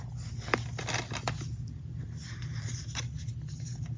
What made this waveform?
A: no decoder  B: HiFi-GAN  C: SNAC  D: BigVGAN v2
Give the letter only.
A